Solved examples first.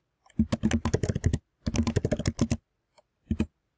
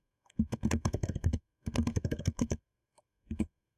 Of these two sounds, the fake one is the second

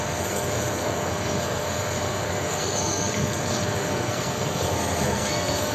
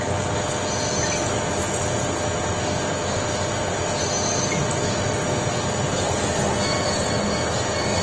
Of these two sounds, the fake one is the first